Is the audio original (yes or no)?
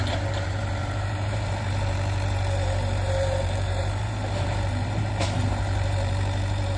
no